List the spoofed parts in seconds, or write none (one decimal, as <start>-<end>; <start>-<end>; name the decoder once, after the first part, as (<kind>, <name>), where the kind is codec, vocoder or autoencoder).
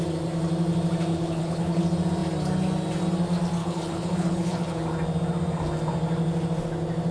1.1-1.8 (codec, HILCodec); 3.6-4.8